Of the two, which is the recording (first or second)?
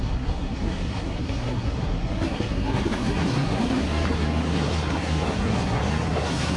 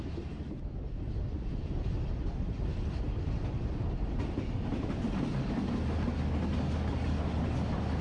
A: second